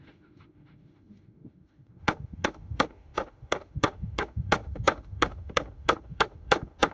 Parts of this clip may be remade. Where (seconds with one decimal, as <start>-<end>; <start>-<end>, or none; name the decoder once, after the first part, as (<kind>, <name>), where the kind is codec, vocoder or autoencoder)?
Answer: 0.0-6.9 (autoencoder, DAC-VAE)